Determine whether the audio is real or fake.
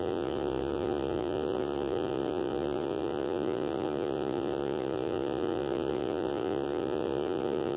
fake